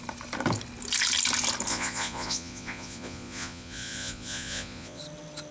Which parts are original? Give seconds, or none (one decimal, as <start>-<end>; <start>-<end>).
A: 0.0-1.7; 5.0-5.5